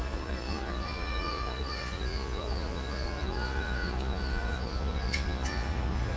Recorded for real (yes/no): no